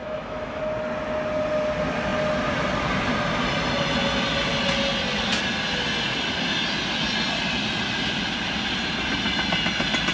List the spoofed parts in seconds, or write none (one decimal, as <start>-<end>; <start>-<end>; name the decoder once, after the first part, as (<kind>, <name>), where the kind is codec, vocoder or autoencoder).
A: 0.0-0.6 (autoencoder, DAC-VAE)